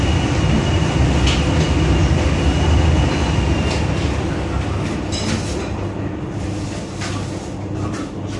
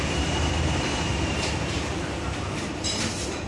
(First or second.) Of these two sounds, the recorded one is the first